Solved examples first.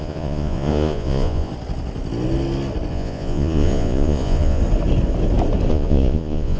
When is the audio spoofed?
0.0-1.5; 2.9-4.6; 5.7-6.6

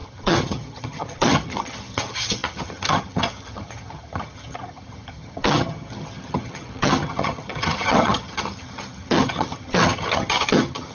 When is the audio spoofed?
0.0-10.9

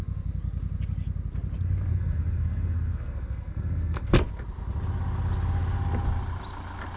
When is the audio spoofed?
1.9-4.1